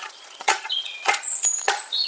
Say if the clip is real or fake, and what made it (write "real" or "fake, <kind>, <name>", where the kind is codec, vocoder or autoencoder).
fake, vocoder, Vocos